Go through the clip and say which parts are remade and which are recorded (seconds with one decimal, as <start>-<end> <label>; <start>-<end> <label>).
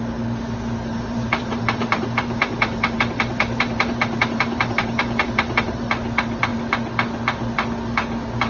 0.0-0.9 recorded; 0.9-5.9 remade; 5.9-8.5 recorded